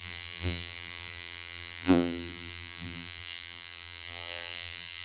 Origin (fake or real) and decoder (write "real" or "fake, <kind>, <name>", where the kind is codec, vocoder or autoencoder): fake, vocoder, BigVGAN v2